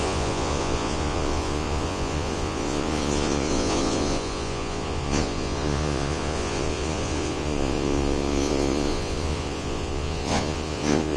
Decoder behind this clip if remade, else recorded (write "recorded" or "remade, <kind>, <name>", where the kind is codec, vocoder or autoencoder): remade, vocoder, Vocos